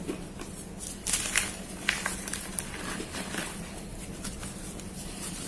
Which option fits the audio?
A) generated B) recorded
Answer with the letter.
B